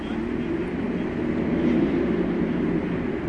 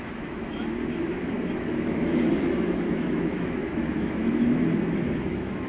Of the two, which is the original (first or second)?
first